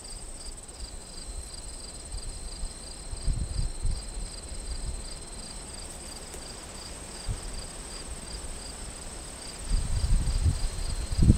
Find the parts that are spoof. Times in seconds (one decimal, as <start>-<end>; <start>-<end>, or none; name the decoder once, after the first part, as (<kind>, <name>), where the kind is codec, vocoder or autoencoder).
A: none